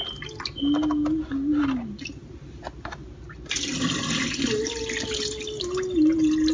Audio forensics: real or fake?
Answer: real